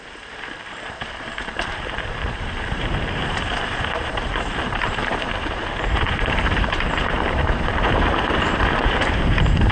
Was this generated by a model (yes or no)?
yes